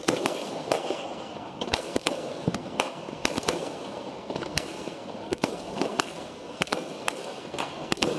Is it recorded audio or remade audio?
remade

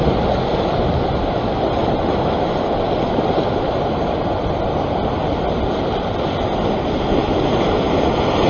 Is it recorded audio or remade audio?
recorded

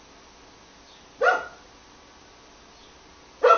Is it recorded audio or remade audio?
recorded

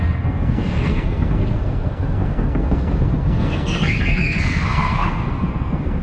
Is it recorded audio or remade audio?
remade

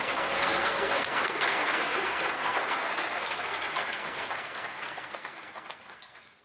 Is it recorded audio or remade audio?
remade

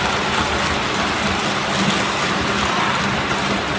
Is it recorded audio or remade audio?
recorded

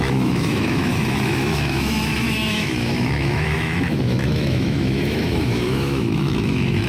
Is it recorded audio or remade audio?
remade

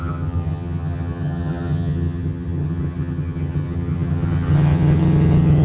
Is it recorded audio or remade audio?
remade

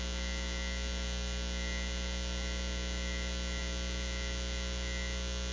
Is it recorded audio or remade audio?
recorded